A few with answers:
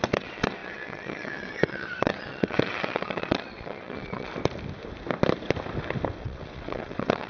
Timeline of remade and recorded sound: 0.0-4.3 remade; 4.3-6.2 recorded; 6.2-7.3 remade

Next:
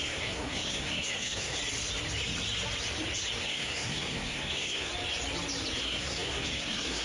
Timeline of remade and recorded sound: 0.0-1.6 remade; 1.6-3.4 recorded; 3.4-4.9 remade; 4.9-5.8 recorded; 5.8-7.0 remade

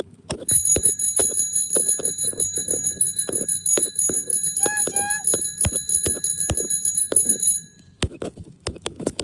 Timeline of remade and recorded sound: 0.0-1.2 remade; 1.2-2.0 recorded; 2.0-4.3 remade; 4.3-6.9 recorded; 6.9-9.2 remade

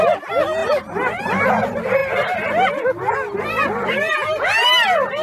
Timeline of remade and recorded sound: 0.0-0.6 recorded; 0.6-1.2 remade; 1.2-5.2 recorded